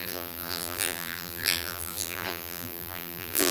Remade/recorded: remade